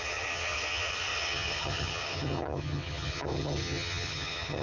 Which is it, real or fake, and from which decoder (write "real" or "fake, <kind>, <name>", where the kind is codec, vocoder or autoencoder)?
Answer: fake, vocoder, HiFi-GAN